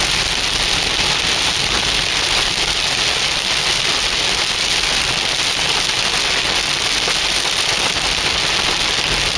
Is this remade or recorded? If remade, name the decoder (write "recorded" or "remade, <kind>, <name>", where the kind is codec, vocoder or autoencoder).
recorded